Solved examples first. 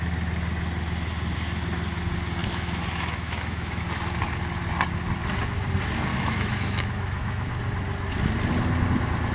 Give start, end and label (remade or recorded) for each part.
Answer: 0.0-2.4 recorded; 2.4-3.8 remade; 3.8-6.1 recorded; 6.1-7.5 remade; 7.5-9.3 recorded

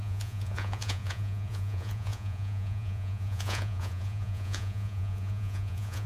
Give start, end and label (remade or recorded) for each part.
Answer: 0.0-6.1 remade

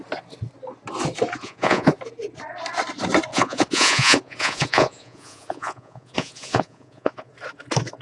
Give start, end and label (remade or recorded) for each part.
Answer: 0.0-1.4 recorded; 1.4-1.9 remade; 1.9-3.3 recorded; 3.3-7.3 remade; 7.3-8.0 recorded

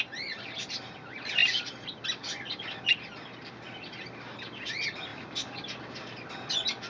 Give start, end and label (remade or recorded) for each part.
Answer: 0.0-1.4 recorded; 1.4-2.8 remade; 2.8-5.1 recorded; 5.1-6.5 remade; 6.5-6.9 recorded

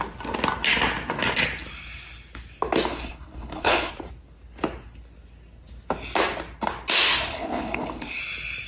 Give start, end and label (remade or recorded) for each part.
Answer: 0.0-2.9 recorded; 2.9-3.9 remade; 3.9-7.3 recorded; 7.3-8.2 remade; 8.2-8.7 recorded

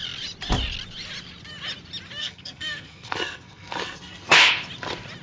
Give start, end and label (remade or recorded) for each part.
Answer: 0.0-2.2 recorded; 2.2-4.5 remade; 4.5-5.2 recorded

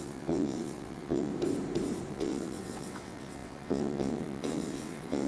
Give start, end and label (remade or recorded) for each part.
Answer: 0.0-1.3 remade; 1.3-2.1 recorded; 2.1-5.3 remade